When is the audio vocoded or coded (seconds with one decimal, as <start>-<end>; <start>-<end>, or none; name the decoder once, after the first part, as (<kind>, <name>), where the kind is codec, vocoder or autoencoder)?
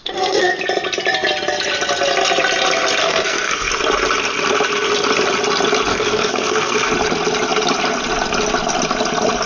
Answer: 0.0-0.6 (codec, SNAC); 3.0-3.7; 5.9-6.9